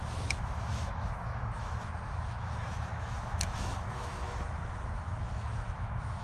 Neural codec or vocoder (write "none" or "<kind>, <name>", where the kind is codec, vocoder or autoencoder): autoencoder, DAC-VAE